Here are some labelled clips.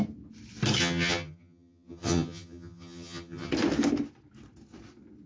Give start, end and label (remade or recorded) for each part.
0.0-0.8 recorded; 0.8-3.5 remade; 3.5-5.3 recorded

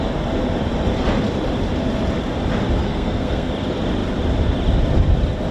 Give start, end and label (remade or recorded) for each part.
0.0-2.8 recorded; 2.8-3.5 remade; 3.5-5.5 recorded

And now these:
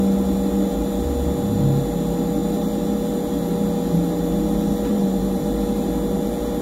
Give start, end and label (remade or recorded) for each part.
0.0-4.9 recorded; 4.9-5.4 remade; 5.4-6.6 recorded

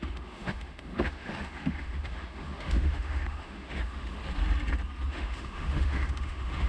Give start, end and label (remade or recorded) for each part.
0.0-4.2 remade; 4.2-5.1 recorded; 5.1-6.7 remade

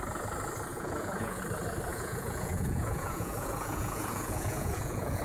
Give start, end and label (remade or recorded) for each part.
0.0-0.7 recorded; 0.7-1.4 remade; 1.4-1.9 recorded; 1.9-5.2 remade